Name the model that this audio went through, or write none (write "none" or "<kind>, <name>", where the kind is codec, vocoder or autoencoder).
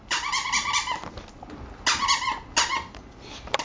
none